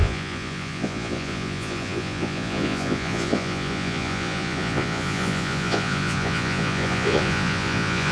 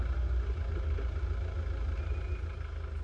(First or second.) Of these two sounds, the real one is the second